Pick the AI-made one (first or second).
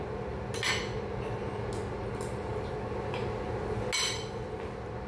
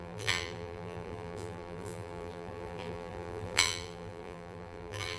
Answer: second